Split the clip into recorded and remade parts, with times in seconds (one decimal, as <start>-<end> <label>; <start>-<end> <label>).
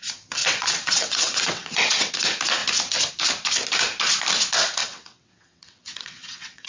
0.0-0.4 recorded; 0.4-2.1 remade; 2.1-4.8 recorded; 4.8-6.7 remade